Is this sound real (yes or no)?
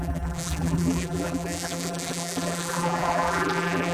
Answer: no